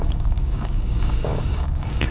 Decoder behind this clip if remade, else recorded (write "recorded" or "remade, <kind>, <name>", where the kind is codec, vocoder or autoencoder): remade, codec, DAC